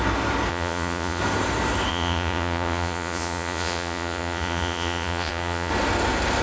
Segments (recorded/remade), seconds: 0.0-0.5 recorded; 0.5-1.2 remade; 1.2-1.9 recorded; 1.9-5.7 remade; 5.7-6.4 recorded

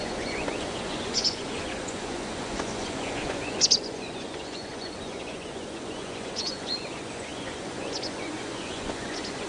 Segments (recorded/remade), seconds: 0.0-9.5 remade

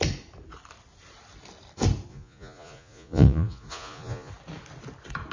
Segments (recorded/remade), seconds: 0.0-2.1 recorded; 2.1-4.3 remade; 4.3-5.3 recorded

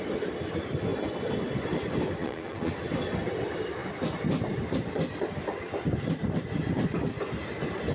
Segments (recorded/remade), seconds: 0.0-2.2 recorded; 2.2-2.7 remade; 2.7-7.9 recorded

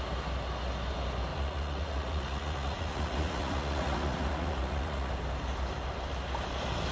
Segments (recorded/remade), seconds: 0.0-1.3 recorded; 1.3-5.1 remade; 5.1-6.9 recorded